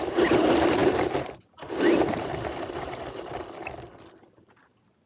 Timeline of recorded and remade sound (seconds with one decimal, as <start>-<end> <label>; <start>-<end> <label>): 0.0-0.8 recorded; 0.8-3.0 remade; 3.0-5.1 recorded